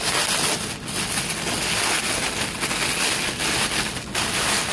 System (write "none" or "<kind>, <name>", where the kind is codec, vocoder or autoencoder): none